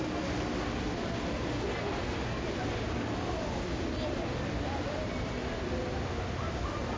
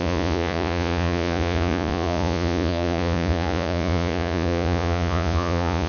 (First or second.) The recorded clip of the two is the first